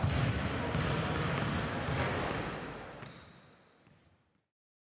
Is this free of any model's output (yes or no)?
yes